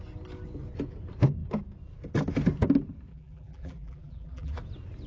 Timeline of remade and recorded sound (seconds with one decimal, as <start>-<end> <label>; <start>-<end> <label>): 0.0-3.1 recorded; 3.1-4.6 remade; 4.6-5.1 recorded